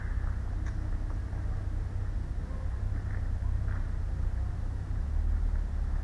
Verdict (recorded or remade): recorded